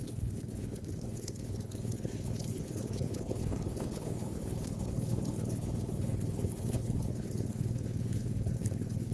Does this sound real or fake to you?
fake